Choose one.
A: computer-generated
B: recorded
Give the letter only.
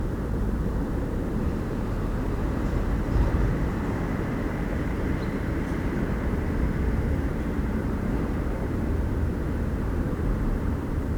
A